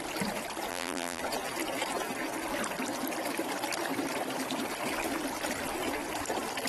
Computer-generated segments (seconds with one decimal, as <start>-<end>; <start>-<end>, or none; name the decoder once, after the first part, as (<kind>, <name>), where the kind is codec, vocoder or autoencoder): 0.7-1.2 (vocoder, BigVGAN v2)